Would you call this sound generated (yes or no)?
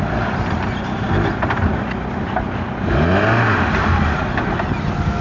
no